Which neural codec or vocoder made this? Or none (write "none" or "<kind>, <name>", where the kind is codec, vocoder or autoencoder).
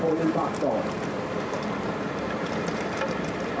vocoder, BigVGAN v2